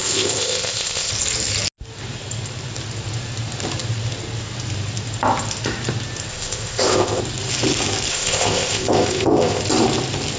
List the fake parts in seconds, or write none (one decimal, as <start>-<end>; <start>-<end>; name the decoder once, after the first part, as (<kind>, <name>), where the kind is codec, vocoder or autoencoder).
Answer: 0.0-1.1 (codec, ZipCodec); 6.3-7.2; 8.1-9.6